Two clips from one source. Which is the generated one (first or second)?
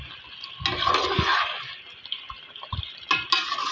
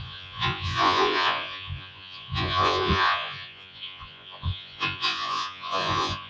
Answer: second